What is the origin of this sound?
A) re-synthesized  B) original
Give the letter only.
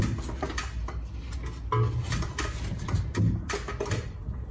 B